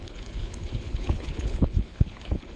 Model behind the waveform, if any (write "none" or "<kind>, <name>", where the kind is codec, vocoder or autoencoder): codec, HILCodec